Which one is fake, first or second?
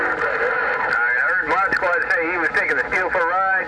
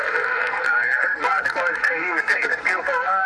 second